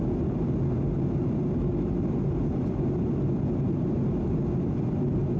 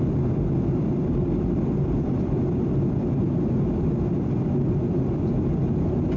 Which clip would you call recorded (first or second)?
first